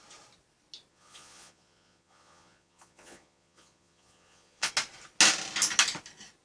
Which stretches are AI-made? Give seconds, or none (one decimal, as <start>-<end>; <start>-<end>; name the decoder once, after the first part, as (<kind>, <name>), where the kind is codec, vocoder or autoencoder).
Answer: 0.9-4.7 (vocoder, Vocos)

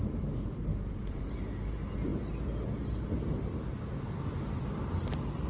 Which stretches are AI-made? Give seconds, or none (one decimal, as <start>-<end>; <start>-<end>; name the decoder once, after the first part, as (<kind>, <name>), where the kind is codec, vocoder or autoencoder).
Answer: 0.7-1.2 (vocoder, Vocos)

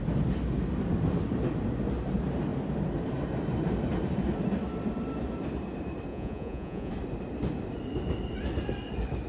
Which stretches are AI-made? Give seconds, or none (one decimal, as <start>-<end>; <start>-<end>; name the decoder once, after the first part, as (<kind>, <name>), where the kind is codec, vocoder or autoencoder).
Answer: 6.1-6.9 (vocoder, Vocos)

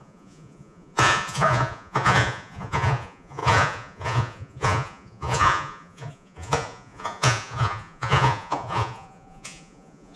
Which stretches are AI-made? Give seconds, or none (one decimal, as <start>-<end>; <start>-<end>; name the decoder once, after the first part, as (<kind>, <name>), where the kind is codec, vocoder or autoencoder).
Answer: 0.0-10.2 (vocoder, Vocos)

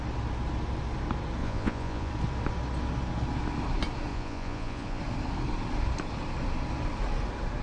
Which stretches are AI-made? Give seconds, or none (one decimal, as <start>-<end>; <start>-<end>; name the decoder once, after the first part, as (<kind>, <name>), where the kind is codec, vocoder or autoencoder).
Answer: 1.4-2.1 (vocoder, Vocos); 4.1-5.0